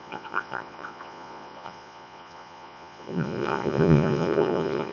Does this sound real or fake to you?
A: fake